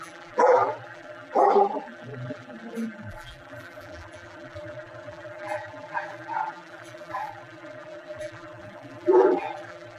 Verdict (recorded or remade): remade